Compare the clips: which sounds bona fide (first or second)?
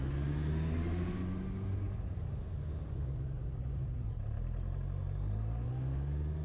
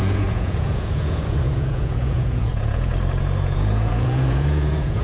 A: first